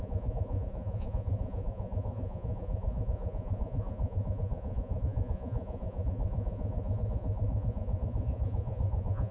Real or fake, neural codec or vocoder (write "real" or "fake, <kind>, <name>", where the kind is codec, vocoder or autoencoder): fake, vocoder, Vocos